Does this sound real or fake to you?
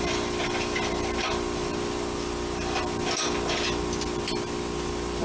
real